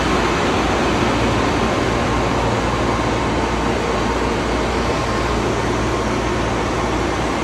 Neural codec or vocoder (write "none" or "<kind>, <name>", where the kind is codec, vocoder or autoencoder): none